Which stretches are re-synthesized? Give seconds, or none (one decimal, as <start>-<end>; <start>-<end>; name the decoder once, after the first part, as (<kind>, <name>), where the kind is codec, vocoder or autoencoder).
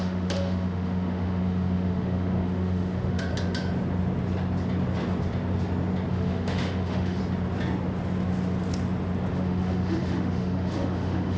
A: 0.0-3.3 (autoencoder, DAC-VAE); 6.1-7.2; 9.3-11.4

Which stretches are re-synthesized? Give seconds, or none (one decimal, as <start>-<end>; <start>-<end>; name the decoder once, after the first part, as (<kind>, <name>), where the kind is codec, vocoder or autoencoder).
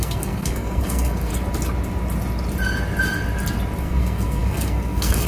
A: 0.0-1.3 (codec, SNAC); 3.8-5.3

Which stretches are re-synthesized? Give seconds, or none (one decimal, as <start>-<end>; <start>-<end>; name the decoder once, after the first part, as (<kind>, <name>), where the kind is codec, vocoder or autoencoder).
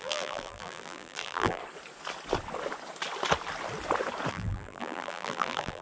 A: 0.0-1.6 (vocoder, BigVGAN v2); 4.3-5.8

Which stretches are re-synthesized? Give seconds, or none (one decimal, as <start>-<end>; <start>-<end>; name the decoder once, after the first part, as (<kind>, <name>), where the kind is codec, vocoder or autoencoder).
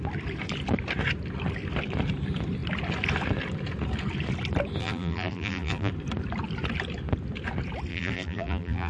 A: 4.8-5.9 (vocoder, BigVGAN v2); 7.9-8.9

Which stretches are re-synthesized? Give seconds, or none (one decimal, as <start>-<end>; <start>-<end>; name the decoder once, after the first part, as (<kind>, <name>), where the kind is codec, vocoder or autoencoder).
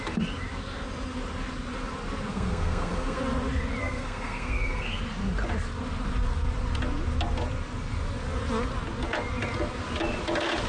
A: 2.3-3.2 (codec, SNAC); 3.8-5.0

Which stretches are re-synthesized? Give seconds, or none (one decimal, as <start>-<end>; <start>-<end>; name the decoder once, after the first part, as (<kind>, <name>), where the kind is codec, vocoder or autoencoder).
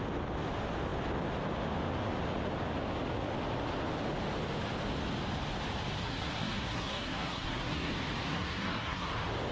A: 6.0-7.9 (codec, SNAC); 8.3-9.1